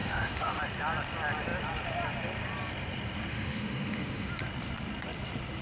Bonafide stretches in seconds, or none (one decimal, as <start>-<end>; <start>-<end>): 0.6-3.3; 4.3-5.6